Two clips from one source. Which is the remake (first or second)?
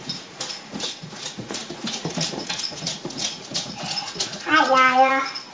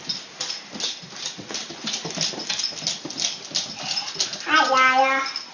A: first